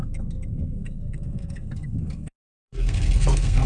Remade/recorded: remade